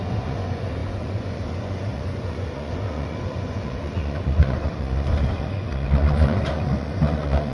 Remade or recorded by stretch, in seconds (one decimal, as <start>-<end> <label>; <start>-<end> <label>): 0.0-7.5 remade

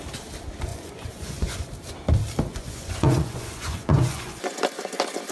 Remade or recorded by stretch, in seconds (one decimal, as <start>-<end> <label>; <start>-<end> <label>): 0.0-0.7 recorded; 0.7-1.7 remade; 1.7-2.5 recorded; 2.5-4.6 remade; 4.6-5.3 recorded